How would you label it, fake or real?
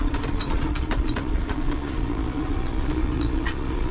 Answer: fake